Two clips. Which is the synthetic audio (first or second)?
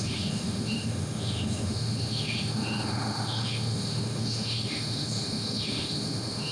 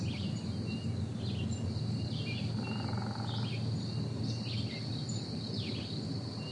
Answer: first